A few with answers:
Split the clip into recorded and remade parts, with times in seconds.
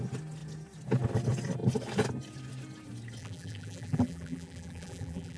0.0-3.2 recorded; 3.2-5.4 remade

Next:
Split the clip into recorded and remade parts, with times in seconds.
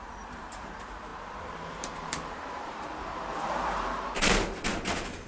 0.0-5.3 remade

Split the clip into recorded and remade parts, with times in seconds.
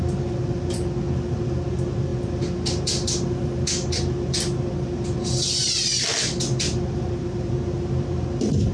0.0-8.7 recorded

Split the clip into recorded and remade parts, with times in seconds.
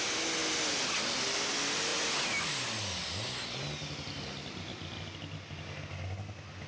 0.0-6.7 recorded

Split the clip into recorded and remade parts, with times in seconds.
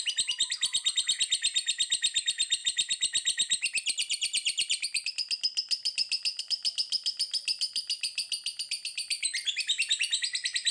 0.0-10.7 recorded